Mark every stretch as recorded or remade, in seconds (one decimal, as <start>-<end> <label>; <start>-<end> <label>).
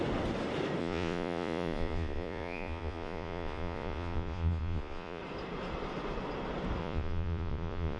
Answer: 0.0-0.8 recorded; 0.8-5.2 remade; 5.2-6.8 recorded; 6.8-8.0 remade